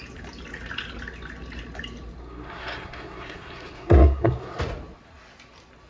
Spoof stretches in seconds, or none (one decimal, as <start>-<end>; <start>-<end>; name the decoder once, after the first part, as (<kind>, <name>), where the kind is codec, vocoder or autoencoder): 2.2-4.6 (codec, SNAC)